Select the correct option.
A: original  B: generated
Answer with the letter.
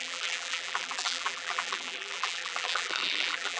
B